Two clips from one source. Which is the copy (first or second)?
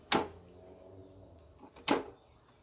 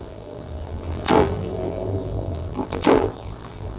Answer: second